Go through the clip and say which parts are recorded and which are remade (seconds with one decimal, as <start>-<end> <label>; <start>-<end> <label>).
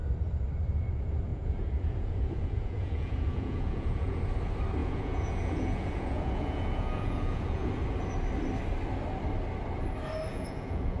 0.0-1.3 recorded; 1.3-4.2 remade; 4.2-4.8 recorded; 4.8-7.7 remade; 7.7-10.3 recorded; 10.3-11.0 remade